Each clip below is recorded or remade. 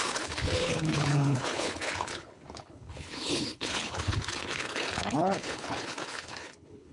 remade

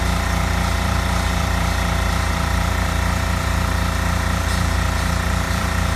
remade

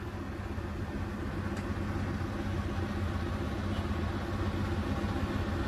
recorded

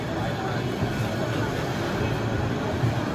recorded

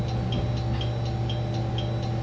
recorded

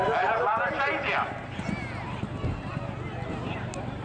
recorded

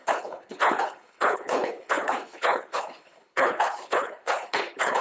remade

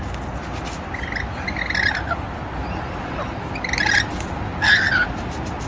recorded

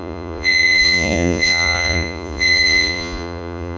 remade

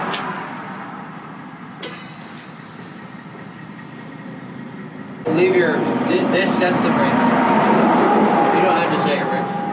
recorded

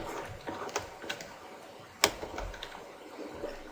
recorded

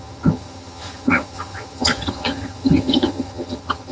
remade